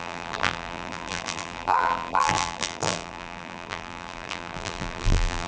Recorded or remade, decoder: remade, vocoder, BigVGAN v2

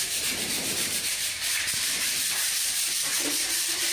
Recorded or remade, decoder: remade, vocoder, BigVGAN v2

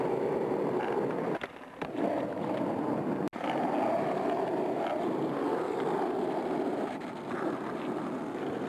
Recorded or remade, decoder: recorded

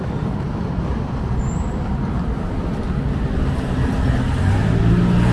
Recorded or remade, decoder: recorded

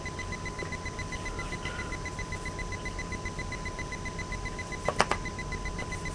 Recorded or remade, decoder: recorded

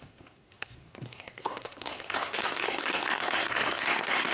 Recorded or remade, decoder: remade, codec, SNAC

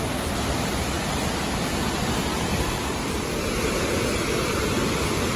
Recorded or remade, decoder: recorded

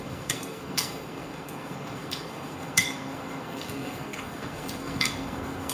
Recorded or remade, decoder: remade, codec, SNAC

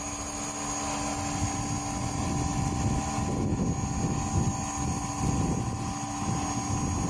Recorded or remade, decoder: recorded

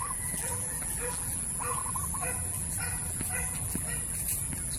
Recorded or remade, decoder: remade, vocoder, BigVGAN v2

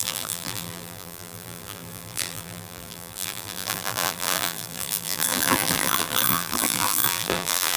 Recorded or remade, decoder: remade, vocoder, BigVGAN v2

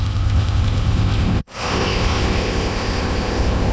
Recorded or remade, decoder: remade, codec, ZipCodec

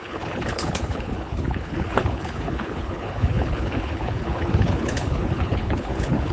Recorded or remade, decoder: remade, codec, HILCodec